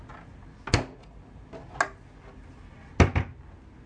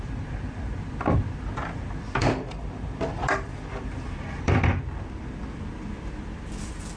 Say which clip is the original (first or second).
first